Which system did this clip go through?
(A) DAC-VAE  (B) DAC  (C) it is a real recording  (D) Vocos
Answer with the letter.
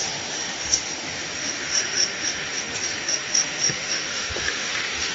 A